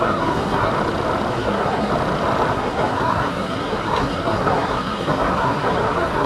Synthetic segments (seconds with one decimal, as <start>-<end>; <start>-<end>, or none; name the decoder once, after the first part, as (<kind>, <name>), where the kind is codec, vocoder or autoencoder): 0.0-0.7 (codec, SNAC); 1.3-1.9; 2.5-6.3